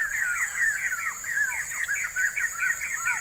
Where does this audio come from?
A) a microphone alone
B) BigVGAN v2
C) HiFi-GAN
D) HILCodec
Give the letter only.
A